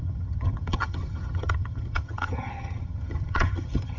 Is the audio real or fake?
fake